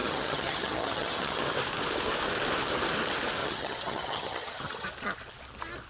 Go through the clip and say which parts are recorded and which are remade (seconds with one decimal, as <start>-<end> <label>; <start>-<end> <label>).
0.0-1.4 remade; 1.4-3.4 recorded; 3.4-4.9 remade; 4.9-5.9 recorded